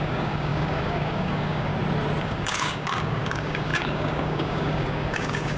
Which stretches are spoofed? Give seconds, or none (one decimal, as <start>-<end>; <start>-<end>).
0.0-1.7; 2.2-5.6